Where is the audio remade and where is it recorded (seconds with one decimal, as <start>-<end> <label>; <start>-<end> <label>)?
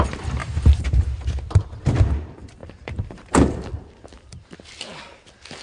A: 0.0-0.4 recorded; 0.4-1.1 remade; 1.1-2.6 recorded; 2.6-3.7 remade; 3.7-5.6 recorded